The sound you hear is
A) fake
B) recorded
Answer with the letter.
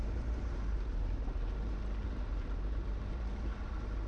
A